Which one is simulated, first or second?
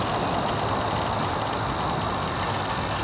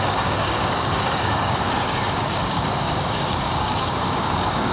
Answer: second